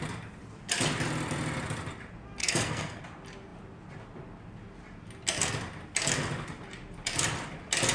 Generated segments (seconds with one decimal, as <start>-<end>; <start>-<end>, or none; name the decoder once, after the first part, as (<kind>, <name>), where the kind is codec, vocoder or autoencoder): 2.4-3.0 (codec, SNAC)